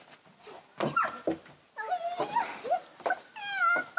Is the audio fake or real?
real